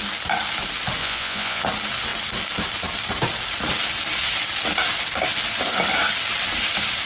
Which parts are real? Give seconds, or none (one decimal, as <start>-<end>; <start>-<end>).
0.0-1.0; 1.6-7.1